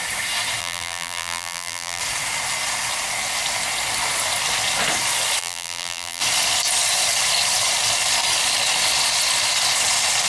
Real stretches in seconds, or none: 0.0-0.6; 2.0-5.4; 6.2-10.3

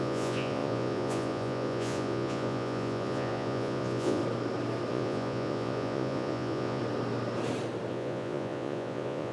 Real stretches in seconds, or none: 4.2-4.9; 6.8-7.9

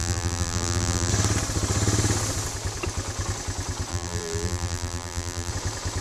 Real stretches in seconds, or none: 1.1-3.9; 5.5-6.0